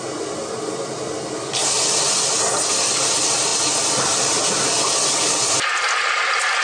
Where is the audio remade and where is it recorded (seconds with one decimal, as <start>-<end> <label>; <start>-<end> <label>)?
0.0-6.6 recorded